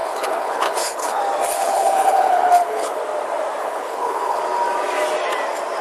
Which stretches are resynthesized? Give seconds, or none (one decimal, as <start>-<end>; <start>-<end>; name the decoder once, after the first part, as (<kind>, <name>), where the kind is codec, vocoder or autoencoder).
0.0-1.2 (codec, HILCodec); 1.6-3.0; 3.6-4.4